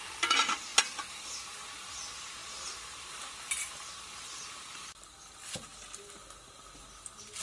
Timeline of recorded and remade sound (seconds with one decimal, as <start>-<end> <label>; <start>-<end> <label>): 0.0-7.4 recorded